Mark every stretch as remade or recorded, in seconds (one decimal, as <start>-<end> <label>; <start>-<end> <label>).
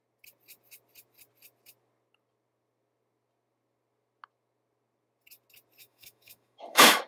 0.0-5.8 recorded; 5.8-7.1 remade